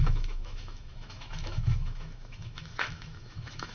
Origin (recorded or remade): remade